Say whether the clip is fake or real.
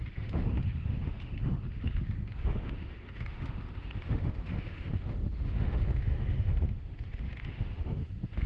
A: fake